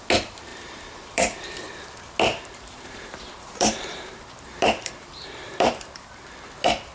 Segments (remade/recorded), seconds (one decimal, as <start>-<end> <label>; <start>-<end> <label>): 0.0-0.5 recorded; 0.5-1.8 remade; 1.8-2.3 recorded; 2.3-6.2 remade; 6.2-6.9 recorded